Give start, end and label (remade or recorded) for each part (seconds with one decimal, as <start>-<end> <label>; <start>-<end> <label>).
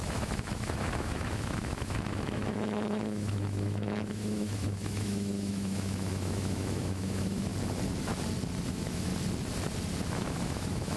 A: 0.0-7.5 remade; 7.5-8.7 recorded; 8.7-9.1 remade; 9.1-10.1 recorded; 10.1-11.0 remade